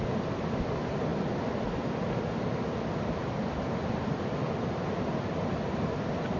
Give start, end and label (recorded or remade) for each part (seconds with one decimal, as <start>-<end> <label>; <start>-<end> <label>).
0.0-6.4 recorded